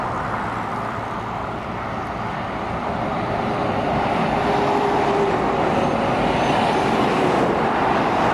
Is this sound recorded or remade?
recorded